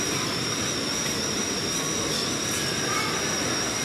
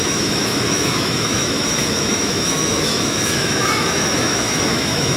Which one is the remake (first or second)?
second